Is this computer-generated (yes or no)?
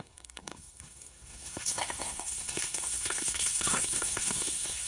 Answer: yes